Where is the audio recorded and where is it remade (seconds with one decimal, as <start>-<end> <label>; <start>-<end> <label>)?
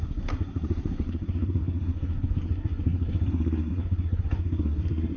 0.0-5.2 remade